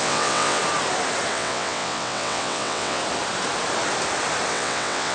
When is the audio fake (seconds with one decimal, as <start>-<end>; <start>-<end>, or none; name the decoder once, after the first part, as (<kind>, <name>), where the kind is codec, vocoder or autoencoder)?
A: 0.0-0.6 (vocoder, WaveNeXt); 1.3-3.0; 4.5-5.1